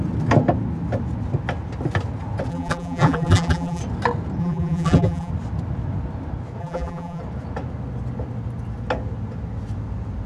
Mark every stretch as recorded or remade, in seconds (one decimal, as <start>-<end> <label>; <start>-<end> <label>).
0.0-2.5 recorded; 2.5-3.8 remade; 3.8-4.4 recorded; 4.4-5.3 remade; 5.3-6.6 recorded; 6.6-7.2 remade; 7.2-10.3 recorded